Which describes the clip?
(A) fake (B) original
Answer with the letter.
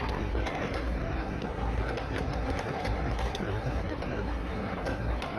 A